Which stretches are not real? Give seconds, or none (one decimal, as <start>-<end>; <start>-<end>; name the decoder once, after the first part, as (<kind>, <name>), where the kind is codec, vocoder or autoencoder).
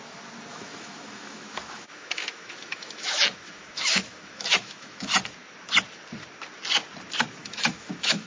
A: 0.5-5.1 (autoencoder, DAC-VAE); 7.4-8.3